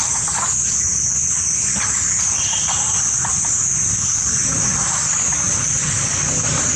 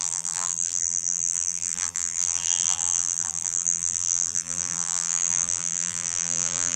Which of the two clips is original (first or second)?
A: first